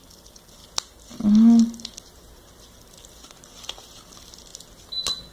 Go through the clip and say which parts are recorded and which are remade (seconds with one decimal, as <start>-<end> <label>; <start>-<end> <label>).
0.0-5.3 recorded